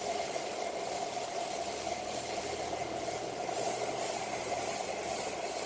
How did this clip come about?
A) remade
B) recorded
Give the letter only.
B